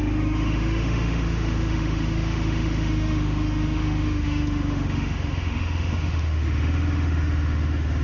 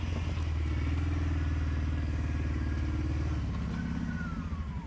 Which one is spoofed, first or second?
first